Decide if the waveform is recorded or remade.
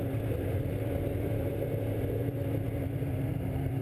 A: remade